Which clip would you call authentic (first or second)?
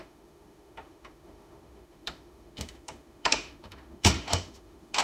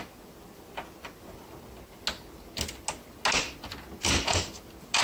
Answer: second